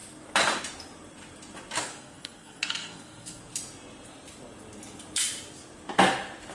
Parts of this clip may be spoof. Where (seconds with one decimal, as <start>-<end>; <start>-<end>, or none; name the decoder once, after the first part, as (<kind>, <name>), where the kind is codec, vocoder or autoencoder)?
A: 1.9-3.4 (codec, SNAC)